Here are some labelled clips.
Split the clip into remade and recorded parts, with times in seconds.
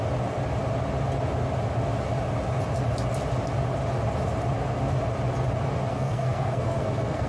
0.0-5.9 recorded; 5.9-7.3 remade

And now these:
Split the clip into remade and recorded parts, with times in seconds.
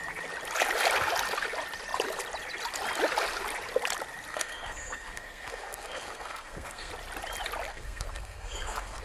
0.0-4.3 recorded; 4.3-6.9 remade; 6.9-7.7 recorded; 7.7-9.0 remade